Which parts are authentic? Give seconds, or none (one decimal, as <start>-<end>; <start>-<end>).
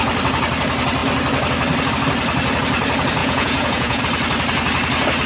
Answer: 0.0-3.2; 4.0-5.3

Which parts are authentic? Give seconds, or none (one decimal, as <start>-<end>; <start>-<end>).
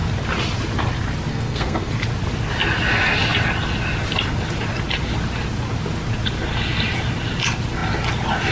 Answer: 0.0-1.3; 1.9-8.5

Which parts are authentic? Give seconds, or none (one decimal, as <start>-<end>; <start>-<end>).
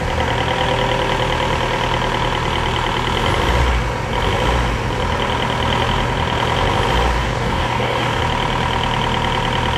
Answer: 0.0-7.2; 8.2-9.8